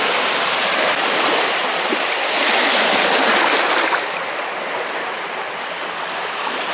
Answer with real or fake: real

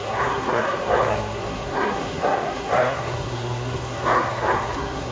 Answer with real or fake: fake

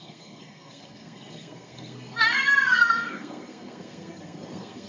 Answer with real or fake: fake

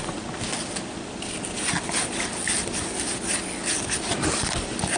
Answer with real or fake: real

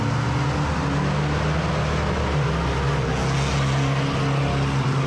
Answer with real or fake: real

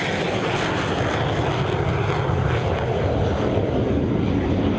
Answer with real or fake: real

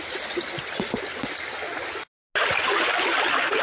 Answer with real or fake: real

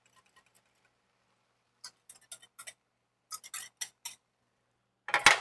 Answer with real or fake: real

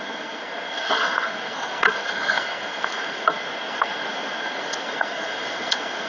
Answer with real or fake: fake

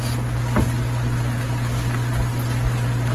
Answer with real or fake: real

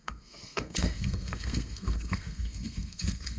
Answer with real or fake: fake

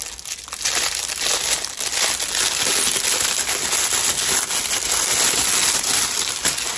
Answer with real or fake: real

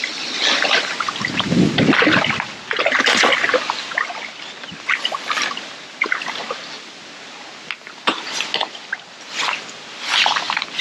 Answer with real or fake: real